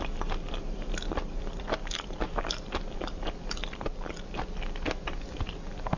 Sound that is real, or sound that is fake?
real